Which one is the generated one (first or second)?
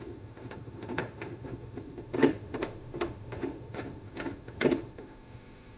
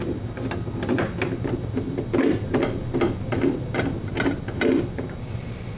first